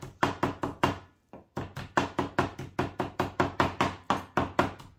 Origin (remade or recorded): recorded